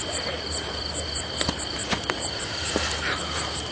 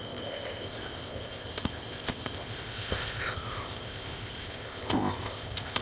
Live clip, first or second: first